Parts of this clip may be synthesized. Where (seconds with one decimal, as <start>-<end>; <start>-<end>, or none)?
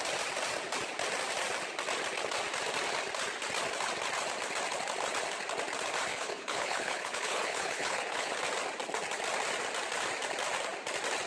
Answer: 6.1-8.4